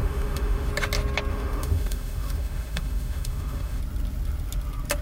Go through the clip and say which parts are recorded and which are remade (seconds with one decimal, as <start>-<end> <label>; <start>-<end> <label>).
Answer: 0.0-0.7 remade; 0.7-1.3 recorded; 1.3-3.8 remade; 3.8-5.0 recorded